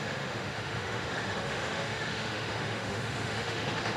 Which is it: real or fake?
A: fake